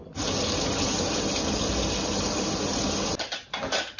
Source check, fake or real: real